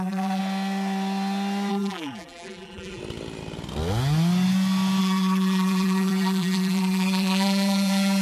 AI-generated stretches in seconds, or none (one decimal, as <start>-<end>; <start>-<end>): 0.0-0.4; 1.7-3.0; 5.0-8.2